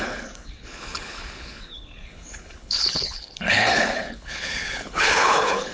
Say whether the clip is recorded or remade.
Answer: remade